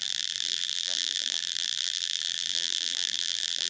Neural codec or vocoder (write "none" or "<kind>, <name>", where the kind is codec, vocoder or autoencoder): vocoder, BigVGAN v2